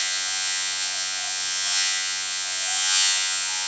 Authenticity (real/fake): fake